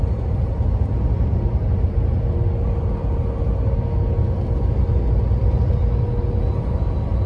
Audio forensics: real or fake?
real